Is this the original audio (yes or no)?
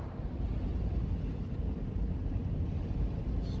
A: yes